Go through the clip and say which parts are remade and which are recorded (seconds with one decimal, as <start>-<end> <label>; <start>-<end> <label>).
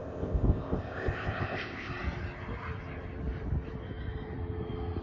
0.0-1.9 remade; 1.9-5.0 recorded